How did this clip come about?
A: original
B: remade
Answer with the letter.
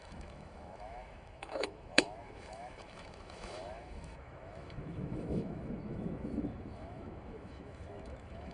B